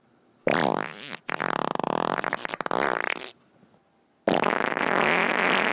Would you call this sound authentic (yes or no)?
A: yes